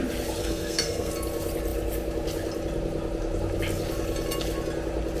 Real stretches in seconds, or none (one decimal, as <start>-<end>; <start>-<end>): 0.0-0.4; 1.1-5.2